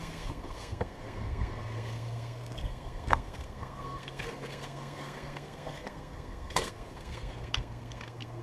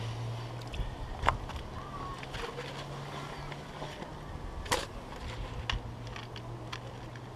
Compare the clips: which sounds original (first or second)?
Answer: second